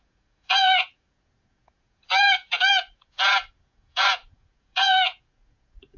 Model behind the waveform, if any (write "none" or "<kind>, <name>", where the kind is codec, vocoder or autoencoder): vocoder, Vocos